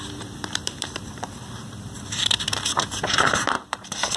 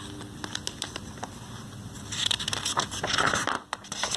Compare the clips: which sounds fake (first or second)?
first